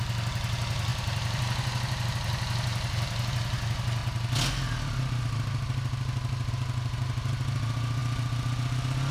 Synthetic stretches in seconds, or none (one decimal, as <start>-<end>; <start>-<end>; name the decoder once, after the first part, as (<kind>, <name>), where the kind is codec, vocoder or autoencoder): none